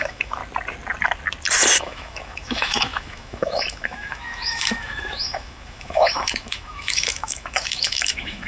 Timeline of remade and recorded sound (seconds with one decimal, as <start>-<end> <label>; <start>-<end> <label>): 0.0-0.4 remade; 0.4-1.8 recorded; 1.8-8.5 remade